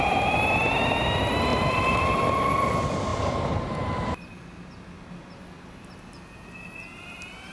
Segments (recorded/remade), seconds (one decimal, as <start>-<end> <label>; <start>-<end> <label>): 0.0-1.5 recorded; 1.5-2.5 remade; 2.5-3.1 recorded; 3.1-3.6 remade; 3.6-7.5 recorded